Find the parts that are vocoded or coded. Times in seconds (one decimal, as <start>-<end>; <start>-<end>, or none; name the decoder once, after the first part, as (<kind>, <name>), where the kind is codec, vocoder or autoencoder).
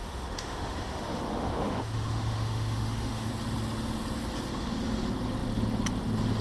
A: 0.0-3.3 (autoencoder, DAC-VAE)